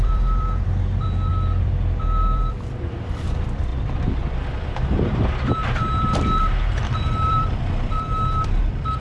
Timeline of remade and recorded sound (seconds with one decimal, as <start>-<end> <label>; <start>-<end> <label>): 0.0-9.0 remade